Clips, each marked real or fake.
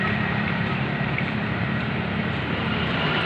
fake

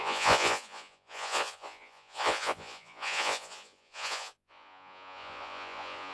fake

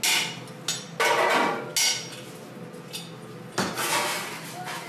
real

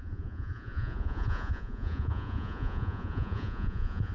fake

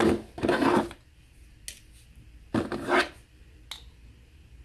real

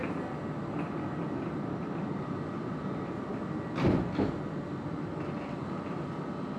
real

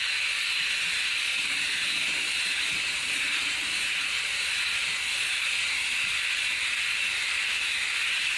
fake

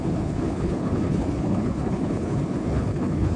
fake